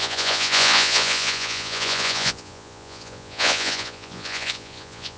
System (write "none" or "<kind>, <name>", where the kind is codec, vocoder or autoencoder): vocoder, Vocos